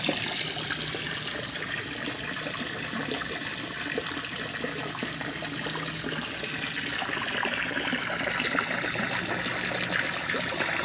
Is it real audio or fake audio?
real